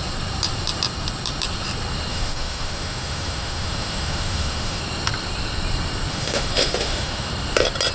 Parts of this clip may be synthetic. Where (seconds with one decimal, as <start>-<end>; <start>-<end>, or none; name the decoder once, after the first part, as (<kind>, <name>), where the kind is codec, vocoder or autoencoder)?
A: 2.1-4.8 (autoencoder, DAC-VAE); 6.1-7.3

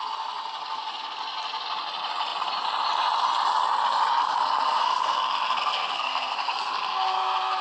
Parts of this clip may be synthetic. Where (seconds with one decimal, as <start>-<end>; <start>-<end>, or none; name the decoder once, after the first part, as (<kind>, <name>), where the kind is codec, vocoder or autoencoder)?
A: 4.2-7.6 (codec, SNAC)

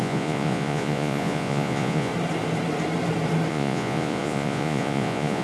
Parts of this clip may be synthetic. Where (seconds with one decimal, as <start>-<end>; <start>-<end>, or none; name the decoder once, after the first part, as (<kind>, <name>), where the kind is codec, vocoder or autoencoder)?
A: 0.0-2.1 (vocoder, Vocos); 3.5-5.4

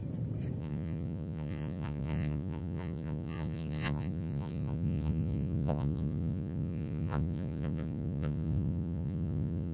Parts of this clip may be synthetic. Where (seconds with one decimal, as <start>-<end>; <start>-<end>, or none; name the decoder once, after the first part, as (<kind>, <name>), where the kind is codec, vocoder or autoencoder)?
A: 0.6-9.7 (vocoder, Vocos)

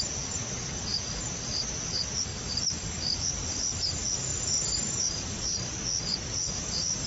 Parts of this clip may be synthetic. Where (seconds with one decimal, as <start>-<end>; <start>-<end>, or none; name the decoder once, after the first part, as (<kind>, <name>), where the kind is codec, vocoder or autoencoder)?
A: 0.0-0.4 (vocoder, BigVGAN v2); 1.7-2.3; 3.3-7.1

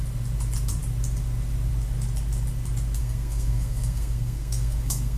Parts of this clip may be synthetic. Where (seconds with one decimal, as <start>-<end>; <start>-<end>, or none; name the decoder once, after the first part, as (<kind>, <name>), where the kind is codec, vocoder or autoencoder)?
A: 3.0-5.2 (codec, SNAC)